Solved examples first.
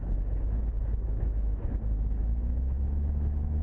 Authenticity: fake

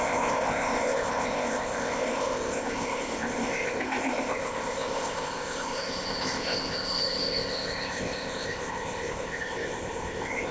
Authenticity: fake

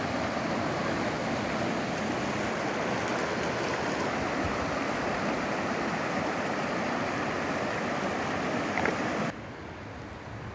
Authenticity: real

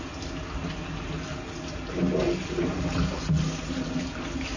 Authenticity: real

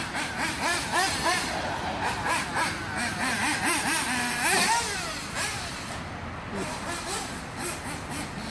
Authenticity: real